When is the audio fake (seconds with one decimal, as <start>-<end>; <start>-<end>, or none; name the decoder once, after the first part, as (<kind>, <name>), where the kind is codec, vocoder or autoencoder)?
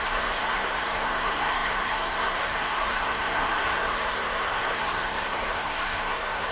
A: 0.0-6.5 (codec, SNAC)